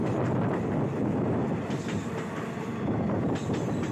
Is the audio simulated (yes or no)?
no